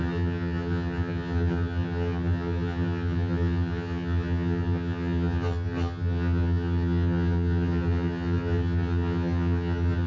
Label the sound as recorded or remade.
remade